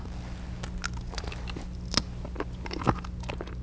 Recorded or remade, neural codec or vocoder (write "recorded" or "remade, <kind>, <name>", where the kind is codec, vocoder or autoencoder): recorded